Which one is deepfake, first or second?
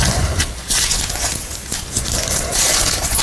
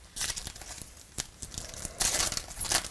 first